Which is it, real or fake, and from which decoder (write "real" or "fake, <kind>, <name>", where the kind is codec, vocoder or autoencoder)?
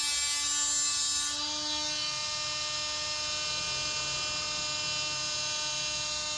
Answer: real